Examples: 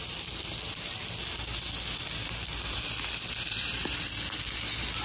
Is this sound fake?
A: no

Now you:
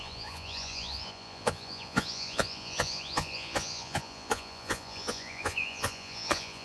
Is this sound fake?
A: yes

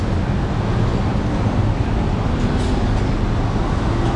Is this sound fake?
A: no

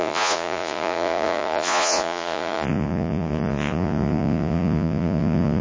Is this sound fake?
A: yes